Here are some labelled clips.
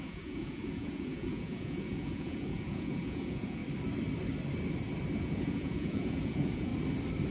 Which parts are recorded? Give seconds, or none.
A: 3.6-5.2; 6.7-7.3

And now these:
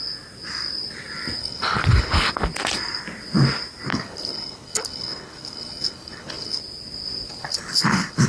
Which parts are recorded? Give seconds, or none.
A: 0.0-1.4; 2.3-3.9; 6.6-7.4

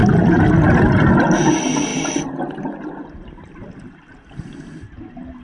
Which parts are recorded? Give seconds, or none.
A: 0.5-1.9; 4.4-5.4

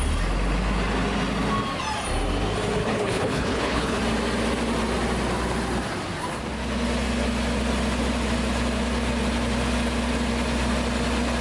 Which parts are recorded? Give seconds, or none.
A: 0.0-2.8; 4.0-11.4

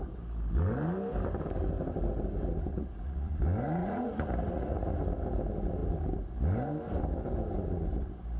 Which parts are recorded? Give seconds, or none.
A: 0.0-2.7; 3.4-3.8; 4.9-8.4

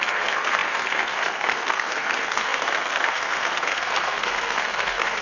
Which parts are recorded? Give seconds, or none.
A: none

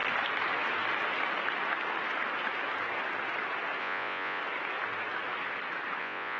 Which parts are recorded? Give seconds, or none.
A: 0.0-3.8; 4.4-6.0

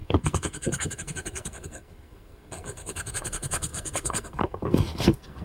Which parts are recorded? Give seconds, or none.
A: none